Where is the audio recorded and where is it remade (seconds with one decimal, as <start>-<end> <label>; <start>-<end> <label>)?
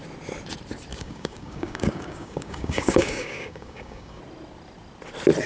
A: 0.0-0.9 recorded; 0.9-4.2 remade; 4.2-5.5 recorded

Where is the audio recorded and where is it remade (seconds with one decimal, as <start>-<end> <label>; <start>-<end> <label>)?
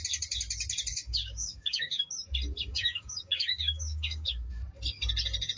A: 0.0-0.9 recorded; 0.9-2.1 remade; 2.1-2.7 recorded; 2.7-4.5 remade; 4.5-5.6 recorded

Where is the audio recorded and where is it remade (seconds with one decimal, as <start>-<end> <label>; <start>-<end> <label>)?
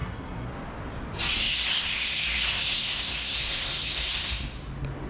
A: 0.0-0.5 remade; 0.5-1.4 recorded; 1.4-4.5 remade; 4.5-5.1 recorded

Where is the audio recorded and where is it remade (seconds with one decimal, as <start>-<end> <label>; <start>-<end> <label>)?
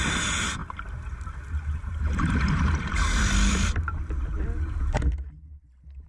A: 0.0-0.6 recorded; 0.6-4.3 remade; 4.3-6.1 recorded